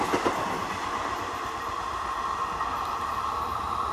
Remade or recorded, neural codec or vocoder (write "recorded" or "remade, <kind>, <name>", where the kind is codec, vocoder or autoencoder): recorded